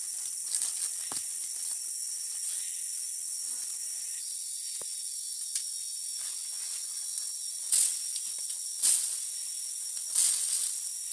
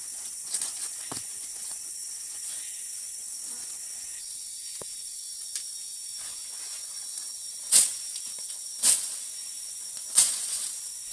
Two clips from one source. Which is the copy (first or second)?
second